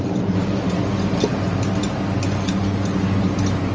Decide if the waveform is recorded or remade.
recorded